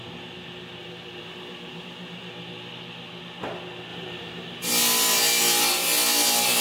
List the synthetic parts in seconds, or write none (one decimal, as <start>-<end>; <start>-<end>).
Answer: 0.8-2.3; 3.9-4.7